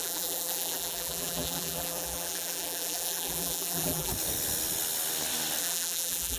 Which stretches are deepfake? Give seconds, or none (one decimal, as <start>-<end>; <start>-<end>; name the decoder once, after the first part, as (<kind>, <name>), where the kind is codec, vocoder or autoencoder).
0.0-4.1 (vocoder, BigVGAN v2); 5.6-6.4